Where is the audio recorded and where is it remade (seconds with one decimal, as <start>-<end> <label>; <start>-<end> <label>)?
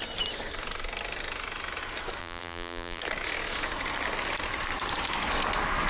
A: 0.0-2.2 recorded; 2.2-3.0 remade; 3.0-5.9 recorded